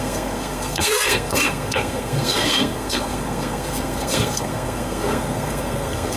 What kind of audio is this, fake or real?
fake